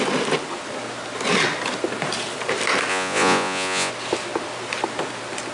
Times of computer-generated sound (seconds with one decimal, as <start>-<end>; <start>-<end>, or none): 2.9-3.9